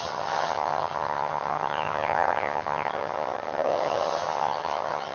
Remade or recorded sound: remade